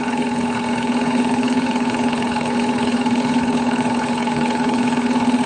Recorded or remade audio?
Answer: remade